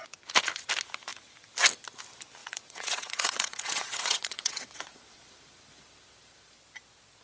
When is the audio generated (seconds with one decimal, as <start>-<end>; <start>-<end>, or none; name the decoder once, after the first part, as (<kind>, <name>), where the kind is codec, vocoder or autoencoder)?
2.4-5.2 (vocoder, WaveNeXt)